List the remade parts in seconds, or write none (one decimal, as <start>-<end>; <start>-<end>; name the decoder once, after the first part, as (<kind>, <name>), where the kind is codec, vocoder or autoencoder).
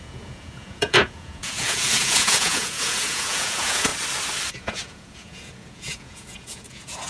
0.0-3.9 (vocoder, Vocos); 4.5-7.1